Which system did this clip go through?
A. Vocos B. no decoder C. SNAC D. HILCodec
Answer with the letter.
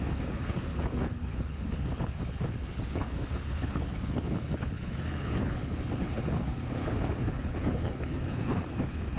D